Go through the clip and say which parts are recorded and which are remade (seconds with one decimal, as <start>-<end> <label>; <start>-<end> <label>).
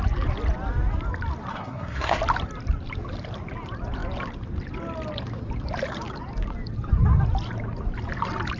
0.0-1.5 recorded; 1.5-2.2 remade; 2.2-8.6 recorded